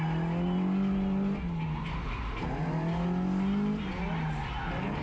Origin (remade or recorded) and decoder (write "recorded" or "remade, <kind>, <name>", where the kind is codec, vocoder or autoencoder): recorded